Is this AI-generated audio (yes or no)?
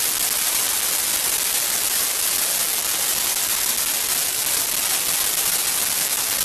no